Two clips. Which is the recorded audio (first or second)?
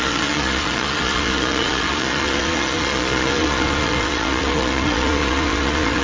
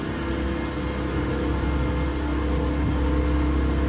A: second